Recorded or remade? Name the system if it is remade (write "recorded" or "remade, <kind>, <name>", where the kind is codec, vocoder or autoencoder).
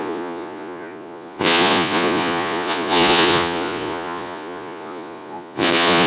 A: remade, vocoder, Vocos